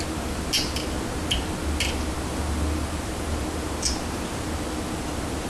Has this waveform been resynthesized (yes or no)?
no